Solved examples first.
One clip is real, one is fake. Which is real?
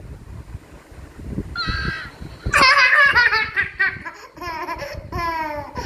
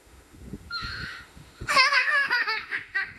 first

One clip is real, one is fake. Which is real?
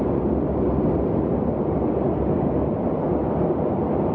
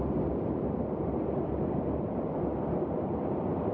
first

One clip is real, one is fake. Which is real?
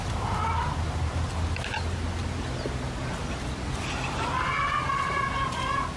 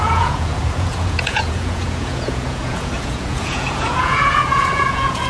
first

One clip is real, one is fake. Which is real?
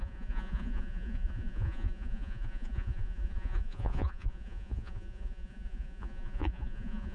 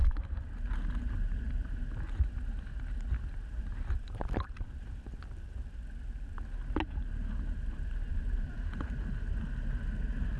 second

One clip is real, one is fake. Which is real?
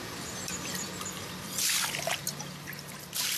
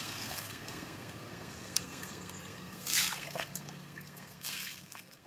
first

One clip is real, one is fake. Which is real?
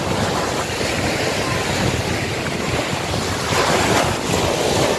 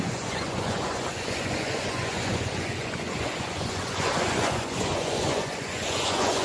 first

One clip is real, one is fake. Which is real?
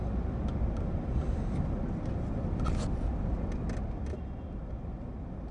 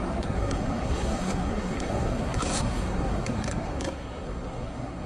first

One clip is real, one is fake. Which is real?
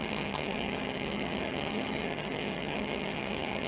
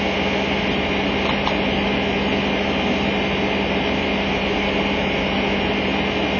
second